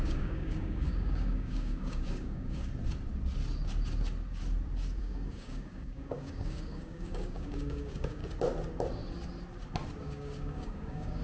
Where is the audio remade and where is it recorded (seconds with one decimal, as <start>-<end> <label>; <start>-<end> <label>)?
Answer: 0.0-2.7 remade; 2.7-5.0 recorded; 5.0-8.2 remade; 8.2-10.0 recorded; 10.0-11.2 remade